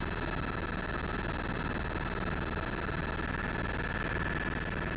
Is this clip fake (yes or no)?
no